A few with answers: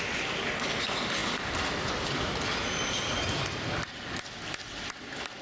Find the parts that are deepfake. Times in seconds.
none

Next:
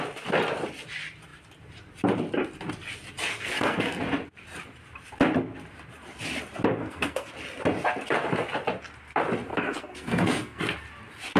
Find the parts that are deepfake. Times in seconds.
3.3-4.0; 6.8-7.3; 9.5-10.6